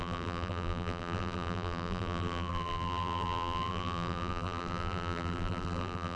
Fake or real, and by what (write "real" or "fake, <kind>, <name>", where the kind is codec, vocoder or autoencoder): fake, vocoder, BigVGAN v2